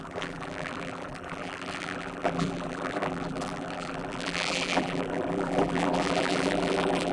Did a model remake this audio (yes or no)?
yes